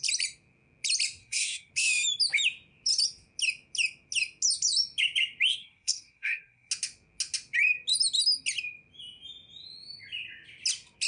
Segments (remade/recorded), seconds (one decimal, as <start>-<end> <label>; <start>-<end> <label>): 0.0-1.2 recorded; 1.2-1.7 remade; 1.7-5.6 recorded; 5.6-6.7 remade; 6.7-11.1 recorded